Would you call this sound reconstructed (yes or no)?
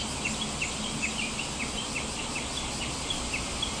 no